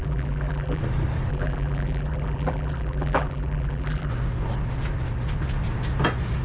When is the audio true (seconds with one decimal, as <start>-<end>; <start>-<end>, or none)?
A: 0.8-1.3; 4.1-6.4